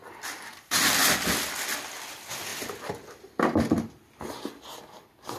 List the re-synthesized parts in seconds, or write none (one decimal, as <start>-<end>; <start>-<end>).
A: none